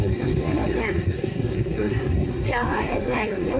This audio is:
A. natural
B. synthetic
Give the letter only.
B